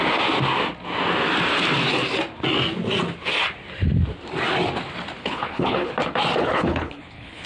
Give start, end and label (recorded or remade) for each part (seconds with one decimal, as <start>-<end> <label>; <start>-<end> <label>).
0.0-5.2 recorded; 5.2-5.9 remade; 5.9-6.4 recorded; 6.4-7.5 remade